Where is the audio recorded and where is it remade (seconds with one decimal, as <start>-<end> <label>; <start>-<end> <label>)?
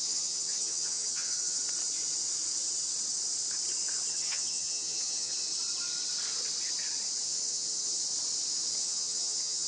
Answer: 0.0-1.6 remade; 1.6-4.1 recorded; 4.1-5.3 remade; 5.3-7.2 recorded; 7.2-8.0 remade; 8.0-8.8 recorded; 8.8-9.7 remade